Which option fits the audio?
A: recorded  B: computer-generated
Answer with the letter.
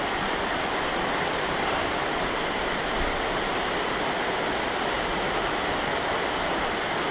A